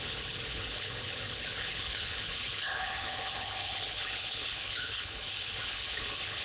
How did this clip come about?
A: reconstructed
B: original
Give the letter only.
A